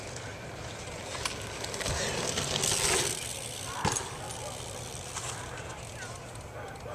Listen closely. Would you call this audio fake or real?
real